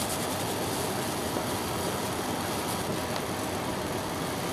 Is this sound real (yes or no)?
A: yes